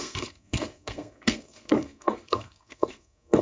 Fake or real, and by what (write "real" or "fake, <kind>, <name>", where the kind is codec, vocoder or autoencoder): fake, codec, SNAC